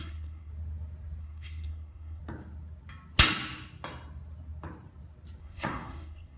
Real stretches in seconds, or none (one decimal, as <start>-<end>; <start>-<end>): 0.5-1.2; 2.2-5.4